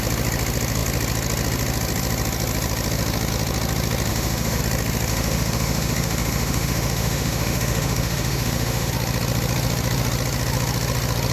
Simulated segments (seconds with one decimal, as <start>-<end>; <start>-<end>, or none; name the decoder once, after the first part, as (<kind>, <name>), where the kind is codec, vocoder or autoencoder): 4.1-4.6 (autoencoder, DAC-VAE); 5.1-8.9